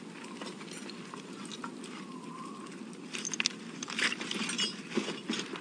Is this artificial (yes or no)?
no